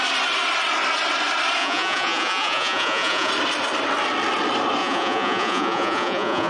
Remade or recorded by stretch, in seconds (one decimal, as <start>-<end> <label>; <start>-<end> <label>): 0.0-1.6 recorded; 1.6-3.3 remade; 3.3-4.8 recorded; 4.8-6.5 remade